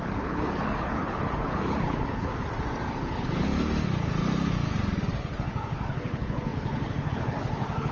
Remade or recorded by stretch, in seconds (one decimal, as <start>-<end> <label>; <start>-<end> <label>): 0.0-2.3 remade; 2.3-3.0 recorded; 3.0-3.5 remade; 3.5-5.2 recorded; 5.2-7.9 remade